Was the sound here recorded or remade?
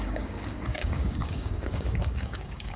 remade